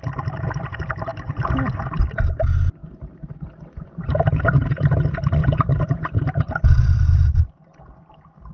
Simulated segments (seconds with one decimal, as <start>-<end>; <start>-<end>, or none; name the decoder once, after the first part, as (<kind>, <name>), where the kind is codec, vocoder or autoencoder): 1.1-2.0 (vocoder, BigVGAN v2); 5.4-8.5